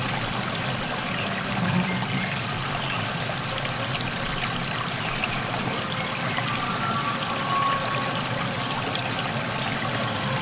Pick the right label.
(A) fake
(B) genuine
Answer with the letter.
B